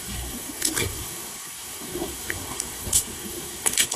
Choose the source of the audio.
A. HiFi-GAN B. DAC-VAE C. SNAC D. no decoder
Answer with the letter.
C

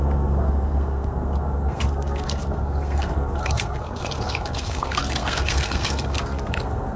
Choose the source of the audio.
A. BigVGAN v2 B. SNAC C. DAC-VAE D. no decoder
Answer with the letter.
B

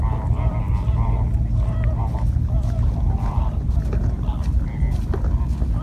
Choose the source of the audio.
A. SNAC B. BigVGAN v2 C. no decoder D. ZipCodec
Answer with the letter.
C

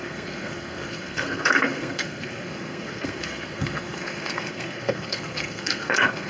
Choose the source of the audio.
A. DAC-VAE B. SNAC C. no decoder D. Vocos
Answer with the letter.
B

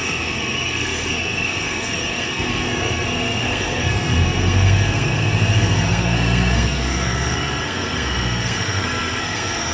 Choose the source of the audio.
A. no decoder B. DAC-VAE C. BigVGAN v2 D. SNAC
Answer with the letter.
D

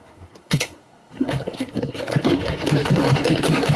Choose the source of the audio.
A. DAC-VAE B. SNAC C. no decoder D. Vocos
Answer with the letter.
B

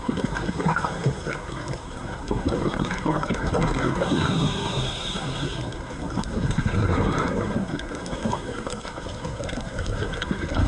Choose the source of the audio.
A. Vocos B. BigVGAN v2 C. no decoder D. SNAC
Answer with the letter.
D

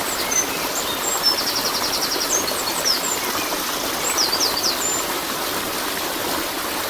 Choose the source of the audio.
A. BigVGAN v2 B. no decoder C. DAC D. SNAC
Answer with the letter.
B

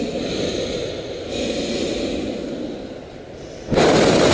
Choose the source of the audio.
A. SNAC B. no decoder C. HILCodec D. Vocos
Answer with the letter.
B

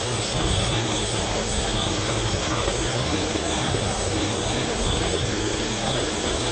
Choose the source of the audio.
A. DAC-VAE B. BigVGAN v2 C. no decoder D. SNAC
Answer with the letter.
D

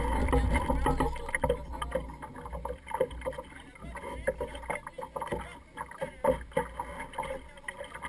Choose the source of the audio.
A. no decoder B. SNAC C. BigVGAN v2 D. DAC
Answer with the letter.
A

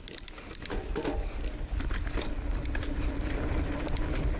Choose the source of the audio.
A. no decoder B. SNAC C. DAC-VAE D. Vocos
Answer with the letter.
A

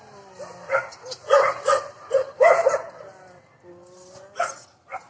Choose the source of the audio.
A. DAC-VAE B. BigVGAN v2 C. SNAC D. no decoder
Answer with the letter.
D